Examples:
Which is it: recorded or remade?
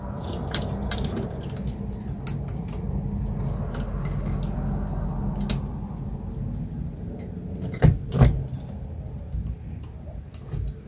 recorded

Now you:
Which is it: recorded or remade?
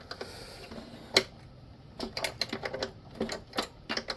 recorded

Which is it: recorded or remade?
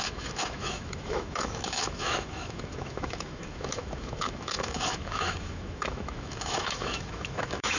remade